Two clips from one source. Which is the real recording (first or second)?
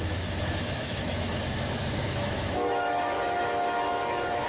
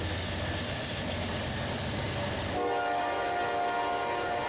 second